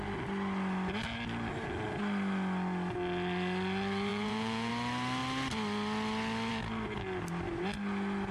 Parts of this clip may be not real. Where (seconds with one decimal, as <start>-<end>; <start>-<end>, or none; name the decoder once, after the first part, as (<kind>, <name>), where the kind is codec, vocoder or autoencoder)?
4.1-4.7 (vocoder, Vocos)